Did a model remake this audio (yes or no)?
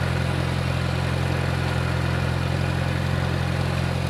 no